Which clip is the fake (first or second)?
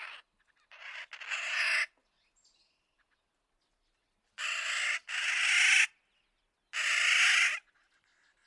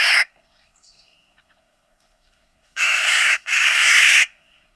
second